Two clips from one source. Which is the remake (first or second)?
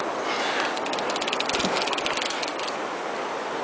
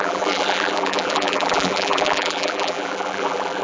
second